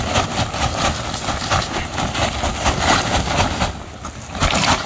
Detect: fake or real real